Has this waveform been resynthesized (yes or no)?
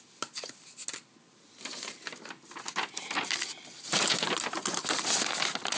no